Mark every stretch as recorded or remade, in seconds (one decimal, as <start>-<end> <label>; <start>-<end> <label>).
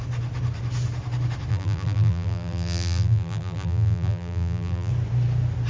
0.0-1.5 recorded; 1.5-4.9 remade; 4.9-5.7 recorded